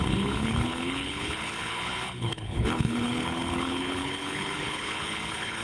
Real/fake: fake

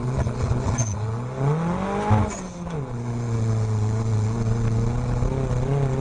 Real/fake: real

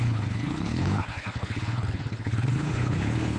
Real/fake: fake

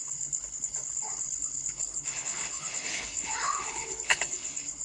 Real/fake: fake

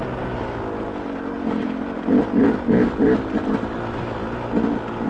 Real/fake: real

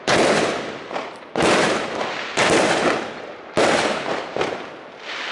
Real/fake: real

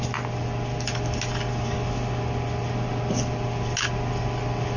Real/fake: real